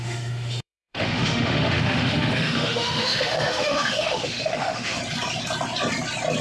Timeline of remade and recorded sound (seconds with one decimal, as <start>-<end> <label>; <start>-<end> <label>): 0.0-5.0 remade; 5.0-6.4 recorded